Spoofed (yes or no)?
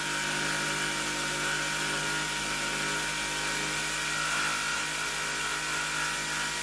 no